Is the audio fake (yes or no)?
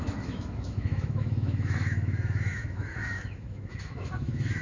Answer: yes